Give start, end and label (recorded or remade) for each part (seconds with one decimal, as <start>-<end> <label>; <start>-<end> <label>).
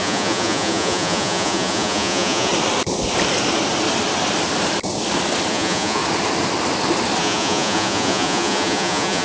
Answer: 0.0-2.5 remade; 2.5-5.5 recorded; 5.5-6.0 remade; 6.0-7.2 recorded; 7.2-9.2 remade